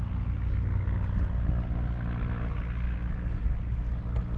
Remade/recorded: recorded